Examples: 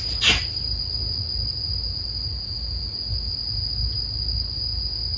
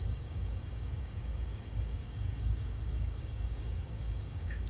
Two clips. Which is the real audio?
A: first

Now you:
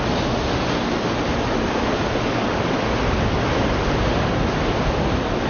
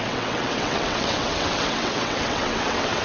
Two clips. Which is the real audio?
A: first